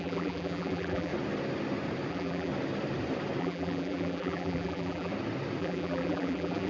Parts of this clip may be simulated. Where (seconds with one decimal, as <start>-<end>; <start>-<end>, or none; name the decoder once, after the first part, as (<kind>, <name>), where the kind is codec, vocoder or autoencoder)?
0.0-1.1 (vocoder, BigVGAN v2); 2.1-2.5; 3.4-5.1; 5.6-6.7